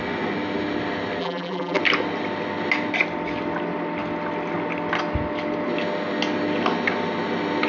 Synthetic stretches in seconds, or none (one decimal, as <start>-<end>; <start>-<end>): 1.2-1.8